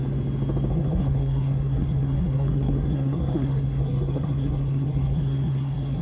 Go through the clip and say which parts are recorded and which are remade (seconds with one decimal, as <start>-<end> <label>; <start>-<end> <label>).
0.0-0.7 recorded; 0.7-6.0 remade